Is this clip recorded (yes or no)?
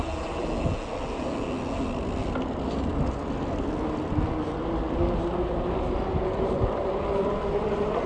yes